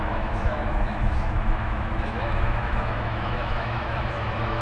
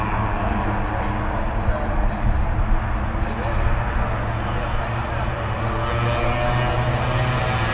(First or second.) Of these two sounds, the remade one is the first